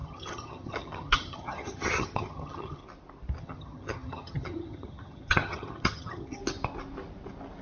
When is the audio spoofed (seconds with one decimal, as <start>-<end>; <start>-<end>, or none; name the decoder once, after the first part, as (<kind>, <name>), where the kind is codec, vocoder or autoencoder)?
0.0-2.8 (vocoder, HiFi-GAN); 3.4-6.4